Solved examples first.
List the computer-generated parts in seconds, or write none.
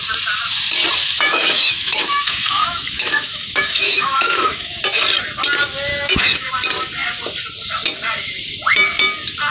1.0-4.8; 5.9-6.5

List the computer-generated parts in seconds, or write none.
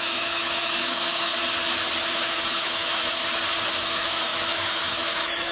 0.0-1.3; 2.1-3.2; 3.8-5.5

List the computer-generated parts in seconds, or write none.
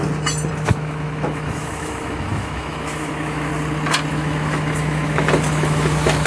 0.5-3.5; 4.1-6.3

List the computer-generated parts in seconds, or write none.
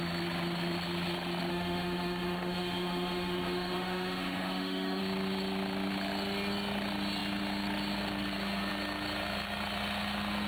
1.5-5.0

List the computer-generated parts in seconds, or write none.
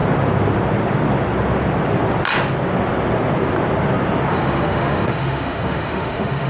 4.3-6.5